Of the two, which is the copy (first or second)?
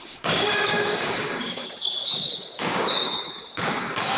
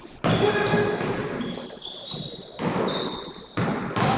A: first